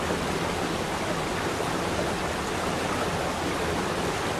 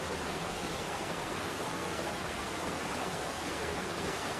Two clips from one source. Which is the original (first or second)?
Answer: first